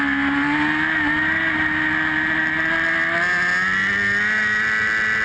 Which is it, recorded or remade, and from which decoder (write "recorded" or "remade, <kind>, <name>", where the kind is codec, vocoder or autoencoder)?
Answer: recorded